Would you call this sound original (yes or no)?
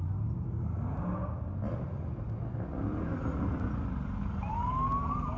yes